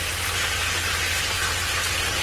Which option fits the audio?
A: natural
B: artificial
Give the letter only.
A